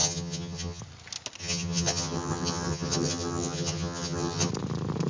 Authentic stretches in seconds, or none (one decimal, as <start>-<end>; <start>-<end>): 0.8-1.4; 4.5-5.1

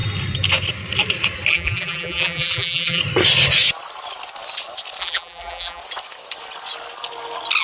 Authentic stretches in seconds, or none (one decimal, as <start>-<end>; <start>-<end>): 0.0-1.5; 3.0-5.0; 5.8-7.6

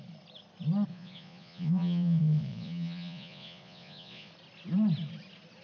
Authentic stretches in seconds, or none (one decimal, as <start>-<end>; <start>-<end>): 0.0-0.9; 4.3-5.6

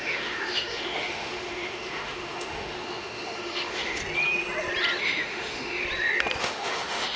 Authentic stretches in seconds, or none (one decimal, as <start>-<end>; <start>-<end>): 4.0-5.0; 5.8-6.4

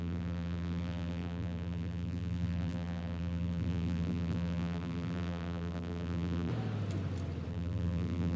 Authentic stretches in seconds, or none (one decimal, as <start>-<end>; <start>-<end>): 6.5-7.5